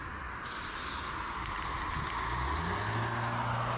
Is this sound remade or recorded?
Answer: recorded